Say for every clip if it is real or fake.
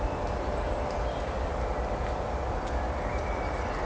real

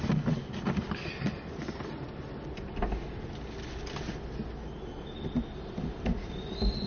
real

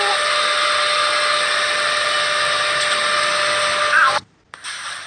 real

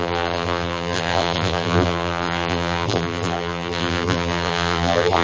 fake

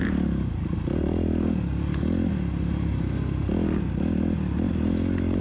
real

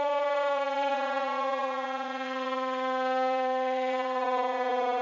fake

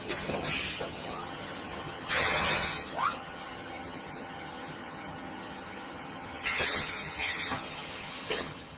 fake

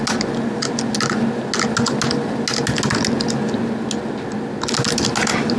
real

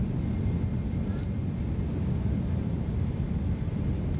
real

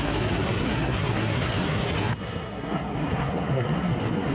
fake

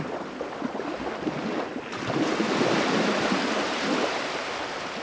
real